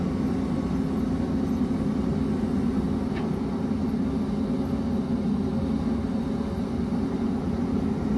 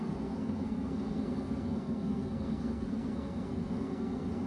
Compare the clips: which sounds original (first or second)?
first